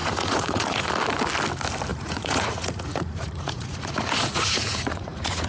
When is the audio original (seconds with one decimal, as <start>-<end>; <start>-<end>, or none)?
0.9-1.9

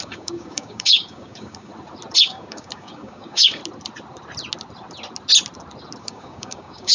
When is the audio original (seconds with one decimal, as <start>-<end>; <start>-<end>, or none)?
1.7-2.2; 3.6-6.0

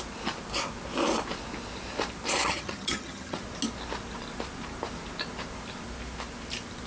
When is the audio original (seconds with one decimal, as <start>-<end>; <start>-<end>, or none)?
0.0-2.4; 3.4-6.9